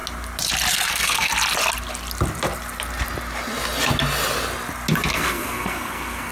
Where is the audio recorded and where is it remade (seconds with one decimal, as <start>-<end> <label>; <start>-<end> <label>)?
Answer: 0.0-0.7 recorded; 0.7-1.3 remade; 1.3-5.1 recorded; 5.1-6.3 remade